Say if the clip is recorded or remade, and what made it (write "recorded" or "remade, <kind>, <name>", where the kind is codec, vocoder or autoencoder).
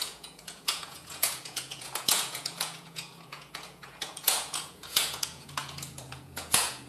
remade, vocoder, Vocos